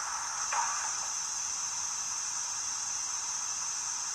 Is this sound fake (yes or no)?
no